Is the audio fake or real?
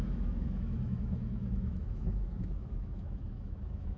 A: fake